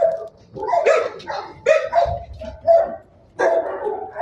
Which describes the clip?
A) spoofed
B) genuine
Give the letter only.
B